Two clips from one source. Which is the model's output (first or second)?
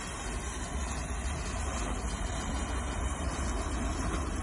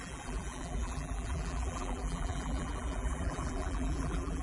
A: second